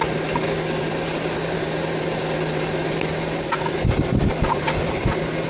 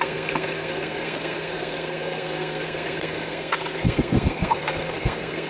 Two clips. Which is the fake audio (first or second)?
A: second